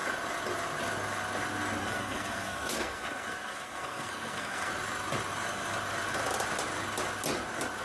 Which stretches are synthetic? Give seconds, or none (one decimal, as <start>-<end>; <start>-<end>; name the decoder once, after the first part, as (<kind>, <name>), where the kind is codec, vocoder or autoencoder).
1.8-4.7 (codec, SNAC)